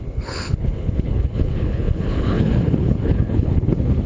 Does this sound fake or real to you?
fake